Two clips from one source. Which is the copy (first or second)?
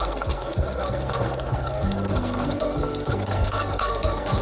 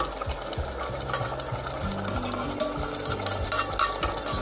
first